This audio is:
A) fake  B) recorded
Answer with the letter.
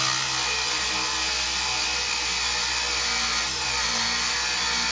B